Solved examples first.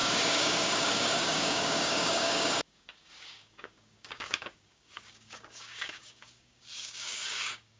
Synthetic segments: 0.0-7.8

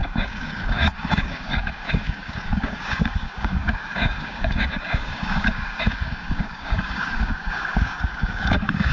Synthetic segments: 0.0-8.9

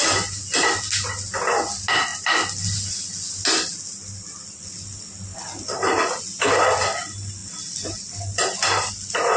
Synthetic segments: none

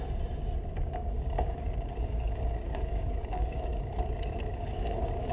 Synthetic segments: 0.7-3.9; 4.5-5.3